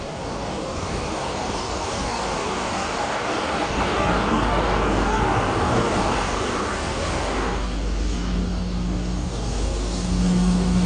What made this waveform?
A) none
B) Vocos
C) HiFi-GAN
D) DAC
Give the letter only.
D